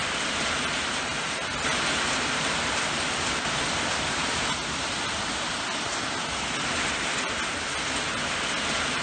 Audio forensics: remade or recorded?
recorded